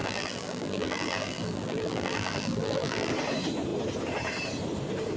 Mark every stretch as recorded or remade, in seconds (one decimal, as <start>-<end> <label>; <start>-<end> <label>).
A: 0.0-3.1 remade; 3.1-5.2 recorded